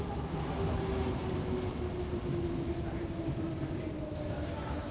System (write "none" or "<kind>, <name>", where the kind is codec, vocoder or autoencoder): none